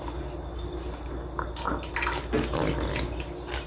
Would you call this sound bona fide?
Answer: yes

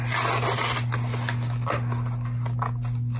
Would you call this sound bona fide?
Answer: yes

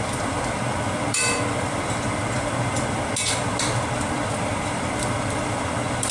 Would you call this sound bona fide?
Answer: no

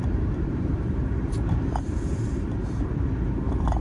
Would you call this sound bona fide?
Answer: no